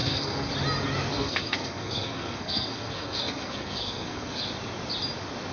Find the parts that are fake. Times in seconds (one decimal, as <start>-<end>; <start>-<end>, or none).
0.0-0.5; 1.1-4.4